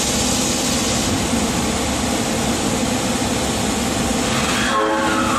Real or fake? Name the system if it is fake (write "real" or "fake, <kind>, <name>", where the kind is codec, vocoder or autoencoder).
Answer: real